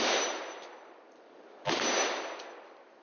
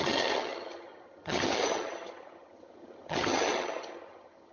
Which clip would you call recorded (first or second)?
first